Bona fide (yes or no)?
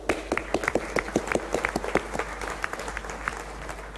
yes